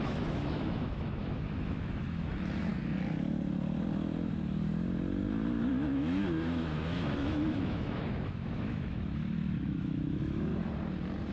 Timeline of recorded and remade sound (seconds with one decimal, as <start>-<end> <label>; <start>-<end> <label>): 0.0-2.7 remade; 2.7-5.7 recorded; 5.7-10.5 remade; 10.5-11.3 recorded